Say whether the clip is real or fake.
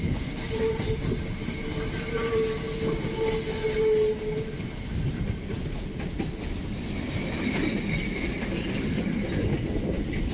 real